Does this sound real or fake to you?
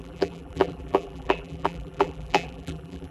fake